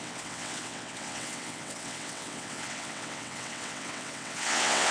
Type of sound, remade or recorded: remade